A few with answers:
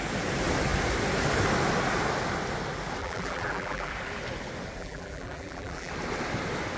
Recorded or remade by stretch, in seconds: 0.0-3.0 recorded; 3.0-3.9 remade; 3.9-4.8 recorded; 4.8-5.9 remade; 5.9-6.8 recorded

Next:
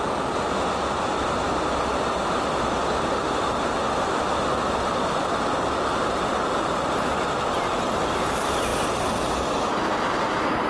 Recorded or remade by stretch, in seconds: 0.0-10.7 recorded

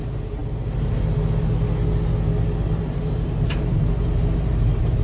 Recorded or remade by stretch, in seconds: 0.0-0.4 remade; 0.4-2.8 recorded; 2.8-5.0 remade

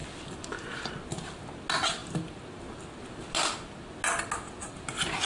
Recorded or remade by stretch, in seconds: 0.0-0.9 remade; 0.9-5.3 recorded

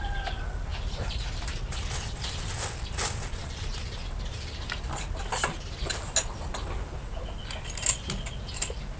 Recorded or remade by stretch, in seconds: 0.0-0.7 recorded; 0.7-1.8 remade; 1.8-9.0 recorded